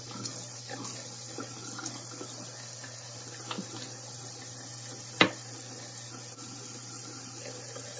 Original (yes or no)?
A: yes